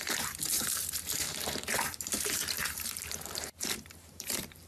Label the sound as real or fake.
fake